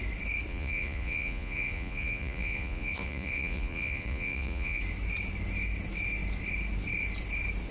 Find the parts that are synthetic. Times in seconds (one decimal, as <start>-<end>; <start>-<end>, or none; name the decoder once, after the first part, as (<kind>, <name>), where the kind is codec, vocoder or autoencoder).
0.5-4.8 (vocoder, Vocos)